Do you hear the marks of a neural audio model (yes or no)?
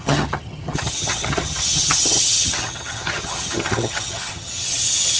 yes